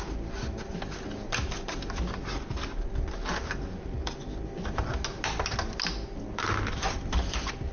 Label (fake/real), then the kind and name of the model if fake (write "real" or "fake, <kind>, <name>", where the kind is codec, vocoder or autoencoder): real